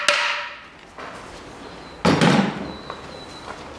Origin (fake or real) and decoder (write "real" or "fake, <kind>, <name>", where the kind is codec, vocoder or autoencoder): real